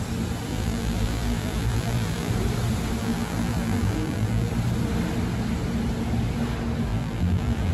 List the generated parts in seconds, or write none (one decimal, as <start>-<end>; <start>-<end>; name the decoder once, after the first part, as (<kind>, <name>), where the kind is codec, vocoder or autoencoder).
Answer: 0.5-2.3 (vocoder, BigVGAN v2); 3.0-4.5; 6.9-7.7